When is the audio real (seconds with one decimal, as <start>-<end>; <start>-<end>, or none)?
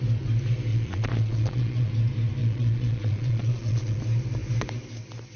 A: 0.0-0.7; 1.9-2.4; 4.0-5.4